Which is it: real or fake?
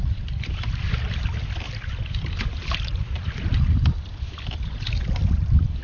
real